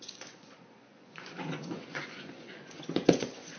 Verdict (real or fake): fake